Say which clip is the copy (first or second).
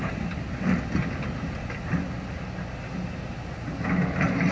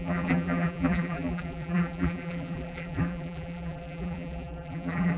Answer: second